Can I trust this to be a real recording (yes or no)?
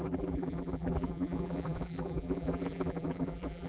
no